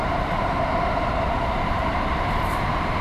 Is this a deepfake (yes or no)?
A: yes